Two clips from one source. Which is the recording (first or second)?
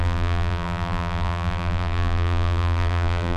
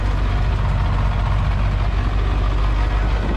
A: second